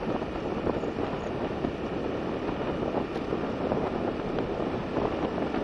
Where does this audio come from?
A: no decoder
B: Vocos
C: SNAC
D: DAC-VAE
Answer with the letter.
A